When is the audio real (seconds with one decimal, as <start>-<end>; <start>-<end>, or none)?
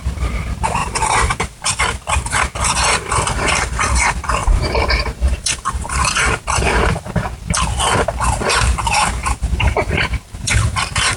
0.0-0.8; 1.8-4.4; 7.1-9.2